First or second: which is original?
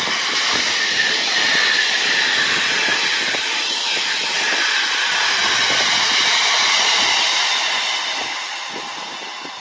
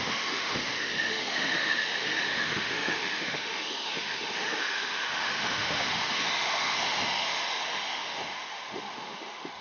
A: first